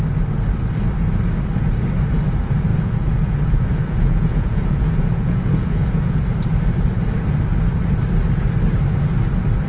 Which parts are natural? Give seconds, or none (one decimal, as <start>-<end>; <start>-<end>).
0.0-2.7; 6.2-9.7